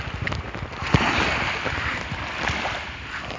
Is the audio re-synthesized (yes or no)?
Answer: no